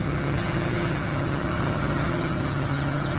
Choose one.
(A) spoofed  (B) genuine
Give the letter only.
A